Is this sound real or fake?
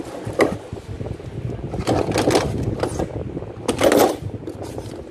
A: real